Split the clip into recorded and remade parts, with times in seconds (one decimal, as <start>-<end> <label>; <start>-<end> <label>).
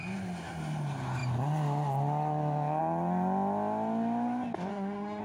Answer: 0.0-4.7 recorded; 4.7-5.2 remade